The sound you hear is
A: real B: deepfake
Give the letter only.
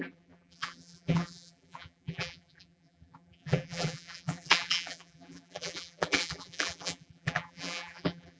B